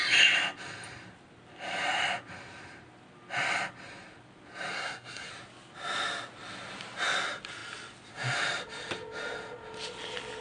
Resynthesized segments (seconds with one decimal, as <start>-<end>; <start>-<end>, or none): 4.7-5.3